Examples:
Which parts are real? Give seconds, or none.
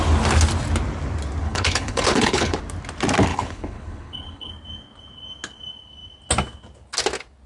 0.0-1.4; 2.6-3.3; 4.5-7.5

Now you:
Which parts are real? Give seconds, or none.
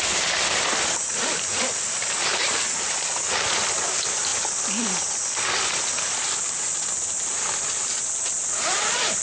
0.0-9.2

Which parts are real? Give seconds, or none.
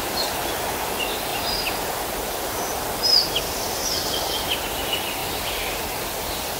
0.0-6.6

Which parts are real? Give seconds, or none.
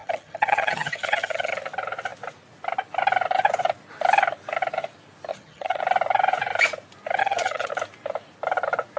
1.5-5.3; 5.8-7.2; 7.7-9.0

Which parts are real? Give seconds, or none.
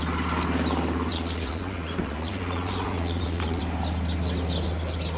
0.0-1.1; 3.6-5.2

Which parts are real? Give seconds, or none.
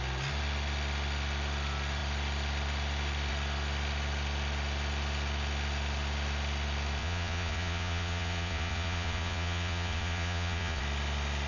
0.0-7.0; 10.8-11.5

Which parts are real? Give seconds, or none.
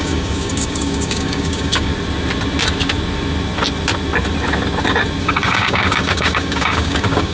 1.9-5.2